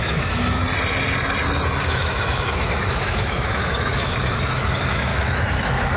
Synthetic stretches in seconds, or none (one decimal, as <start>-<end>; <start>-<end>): 0.0-0.6; 1.8-6.0